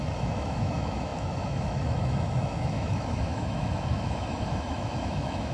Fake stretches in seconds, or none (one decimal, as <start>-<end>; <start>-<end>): 0.0-5.5